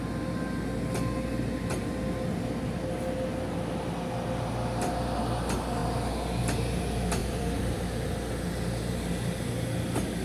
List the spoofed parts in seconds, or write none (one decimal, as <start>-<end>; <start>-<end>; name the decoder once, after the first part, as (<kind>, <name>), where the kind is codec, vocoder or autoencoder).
7.2-8.3 (vocoder, BigVGAN v2)